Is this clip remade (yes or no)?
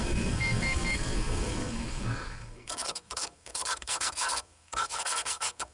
yes